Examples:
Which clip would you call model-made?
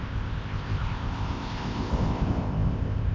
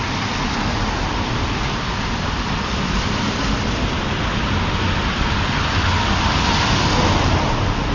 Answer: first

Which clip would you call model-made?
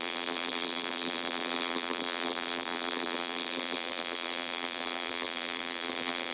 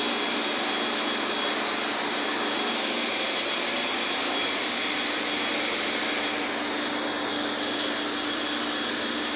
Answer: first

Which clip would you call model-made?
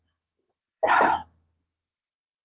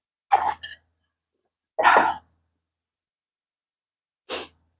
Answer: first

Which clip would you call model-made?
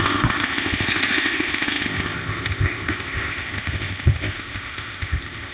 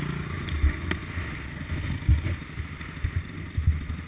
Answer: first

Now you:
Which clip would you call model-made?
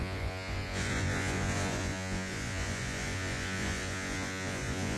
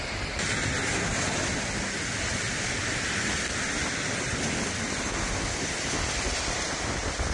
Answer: first